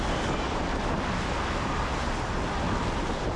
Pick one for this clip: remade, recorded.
recorded